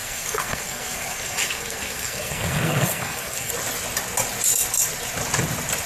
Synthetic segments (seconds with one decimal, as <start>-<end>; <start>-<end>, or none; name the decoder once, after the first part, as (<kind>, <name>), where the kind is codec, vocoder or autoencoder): 0.0-3.5 (codec, SNAC)